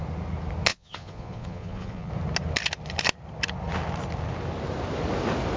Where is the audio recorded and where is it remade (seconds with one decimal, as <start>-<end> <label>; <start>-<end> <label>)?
0.0-0.7 recorded; 0.7-2.1 remade; 2.1-5.6 recorded